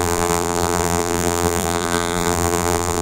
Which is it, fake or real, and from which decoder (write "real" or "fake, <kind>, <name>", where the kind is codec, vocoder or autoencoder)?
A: fake, vocoder, BigVGAN v2